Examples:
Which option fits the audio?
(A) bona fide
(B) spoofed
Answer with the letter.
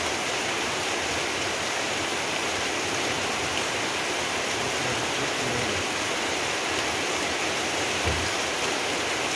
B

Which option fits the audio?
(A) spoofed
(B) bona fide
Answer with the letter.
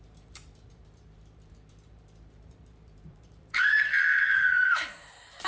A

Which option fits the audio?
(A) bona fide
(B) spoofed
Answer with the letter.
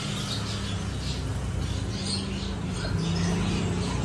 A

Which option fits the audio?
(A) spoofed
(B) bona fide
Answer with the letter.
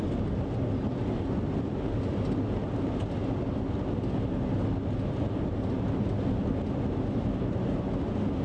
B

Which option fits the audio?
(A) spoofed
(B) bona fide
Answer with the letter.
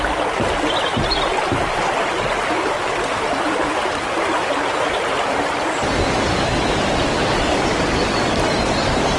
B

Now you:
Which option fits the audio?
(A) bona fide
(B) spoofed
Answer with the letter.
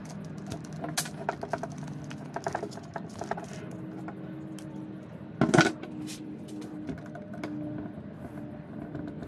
A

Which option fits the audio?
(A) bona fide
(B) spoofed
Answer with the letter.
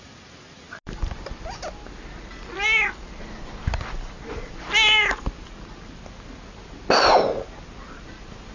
A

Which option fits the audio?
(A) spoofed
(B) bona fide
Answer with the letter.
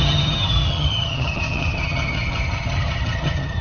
A